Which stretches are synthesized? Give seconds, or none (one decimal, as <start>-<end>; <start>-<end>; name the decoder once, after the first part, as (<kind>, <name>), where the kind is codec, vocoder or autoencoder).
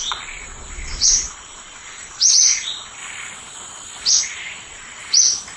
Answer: 0.0-3.0 (vocoder, Vocos); 4.2-5.0